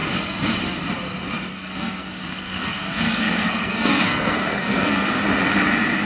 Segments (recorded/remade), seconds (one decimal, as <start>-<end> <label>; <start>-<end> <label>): 0.0-1.5 recorded; 1.5-5.1 remade; 5.1-6.0 recorded